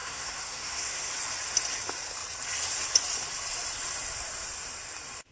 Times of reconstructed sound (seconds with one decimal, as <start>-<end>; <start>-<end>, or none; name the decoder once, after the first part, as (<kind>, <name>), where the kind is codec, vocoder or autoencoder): 0.0-1.1 (codec, SNAC)